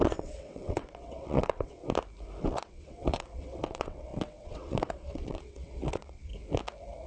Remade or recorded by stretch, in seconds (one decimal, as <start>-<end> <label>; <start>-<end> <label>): 0.0-1.8 remade; 1.8-2.4 recorded; 2.4-6.3 remade; 6.3-7.1 recorded